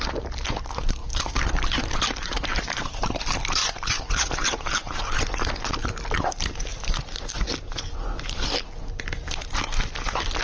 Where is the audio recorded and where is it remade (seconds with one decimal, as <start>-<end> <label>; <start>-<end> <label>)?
0.0-1.0 recorded; 1.0-2.8 remade; 2.8-3.6 recorded; 3.6-5.0 remade; 5.0-10.4 recorded